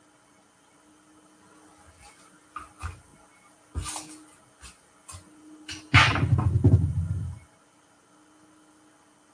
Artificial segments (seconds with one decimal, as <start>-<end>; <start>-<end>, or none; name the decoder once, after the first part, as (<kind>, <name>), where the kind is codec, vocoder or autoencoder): none